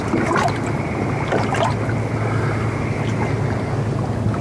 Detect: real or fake real